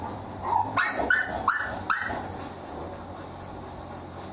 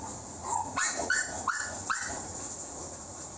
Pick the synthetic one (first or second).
second